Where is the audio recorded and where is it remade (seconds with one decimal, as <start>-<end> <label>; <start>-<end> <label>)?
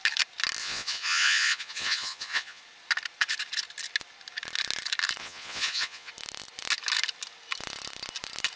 0.0-0.6 recorded; 0.6-2.6 remade; 2.6-5.2 recorded; 5.2-6.1 remade; 6.1-8.6 recorded